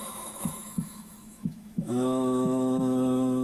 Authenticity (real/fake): fake